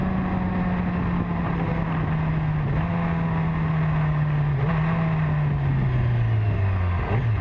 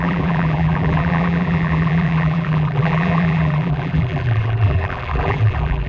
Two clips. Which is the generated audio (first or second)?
second